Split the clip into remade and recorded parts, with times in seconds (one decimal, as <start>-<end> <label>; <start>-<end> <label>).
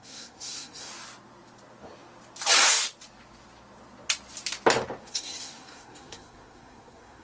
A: 0.0-0.9 remade; 0.9-5.0 recorded; 5.0-7.2 remade